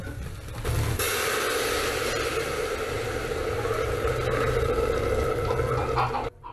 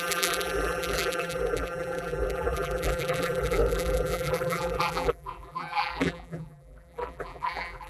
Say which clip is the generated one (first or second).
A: second